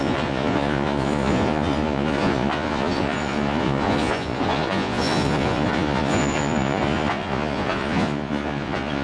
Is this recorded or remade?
remade